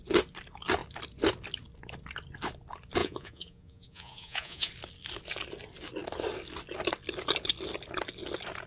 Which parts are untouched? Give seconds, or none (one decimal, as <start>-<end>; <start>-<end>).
0.0-3.0; 4.7-8.7